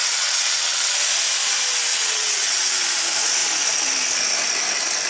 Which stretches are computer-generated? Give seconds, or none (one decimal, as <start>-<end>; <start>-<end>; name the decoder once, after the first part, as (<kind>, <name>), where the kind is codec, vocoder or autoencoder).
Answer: 0.0-0.9 (vocoder, WaveNeXt); 1.9-2.8